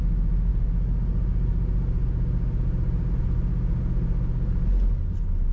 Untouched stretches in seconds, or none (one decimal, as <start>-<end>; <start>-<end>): 0.0-5.5